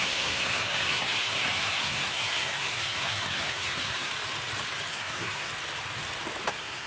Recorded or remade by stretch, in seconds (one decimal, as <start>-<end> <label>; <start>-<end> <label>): 0.0-4.1 remade; 4.1-4.9 recorded; 4.9-5.5 remade; 5.5-6.5 recorded; 6.5-6.9 remade